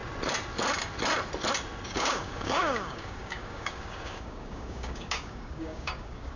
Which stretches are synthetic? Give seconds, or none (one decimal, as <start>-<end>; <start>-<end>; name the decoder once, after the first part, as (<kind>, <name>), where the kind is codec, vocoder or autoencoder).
1.9-6.4 (codec, DAC)